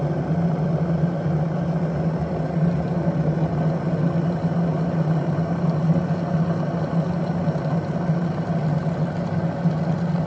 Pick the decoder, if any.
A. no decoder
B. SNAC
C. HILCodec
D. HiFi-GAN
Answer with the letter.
A